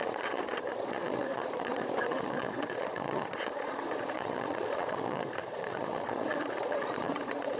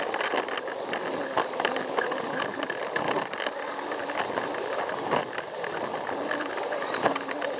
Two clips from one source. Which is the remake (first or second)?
first